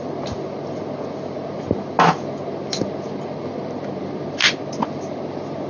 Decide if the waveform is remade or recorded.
recorded